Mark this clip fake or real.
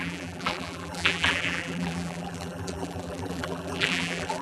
fake